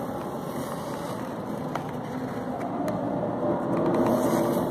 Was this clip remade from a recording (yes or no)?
no